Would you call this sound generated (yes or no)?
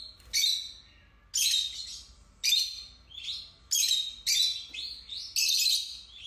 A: no